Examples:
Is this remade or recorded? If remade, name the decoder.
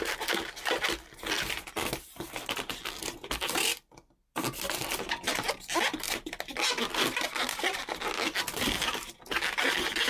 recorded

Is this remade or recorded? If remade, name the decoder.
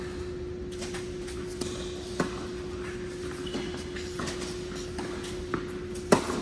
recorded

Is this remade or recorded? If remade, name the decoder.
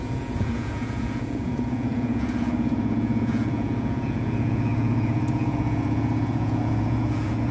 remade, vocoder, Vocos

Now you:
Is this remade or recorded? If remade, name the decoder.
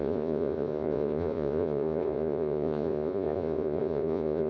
remade, vocoder, Vocos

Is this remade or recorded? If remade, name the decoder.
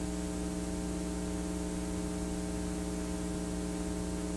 recorded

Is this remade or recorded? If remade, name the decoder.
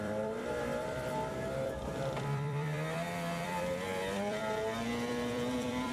remade, vocoder, BigVGAN v2